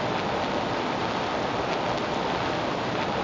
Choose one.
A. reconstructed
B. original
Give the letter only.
B